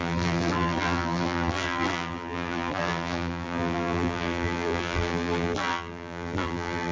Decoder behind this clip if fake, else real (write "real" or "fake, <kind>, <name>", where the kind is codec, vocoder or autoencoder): fake, vocoder, BigVGAN v2